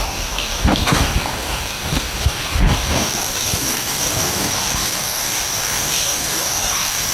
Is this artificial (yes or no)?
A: yes